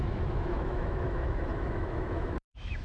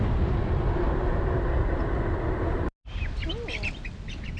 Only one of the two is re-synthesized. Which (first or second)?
first